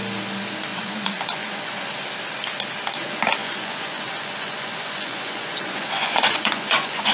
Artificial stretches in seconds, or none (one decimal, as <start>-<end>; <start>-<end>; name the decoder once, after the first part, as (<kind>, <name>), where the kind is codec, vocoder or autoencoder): 0.7-1.9 (vocoder, Vocos); 3.4-7.1